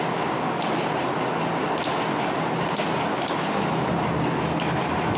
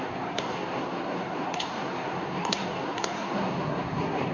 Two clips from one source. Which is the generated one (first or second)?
second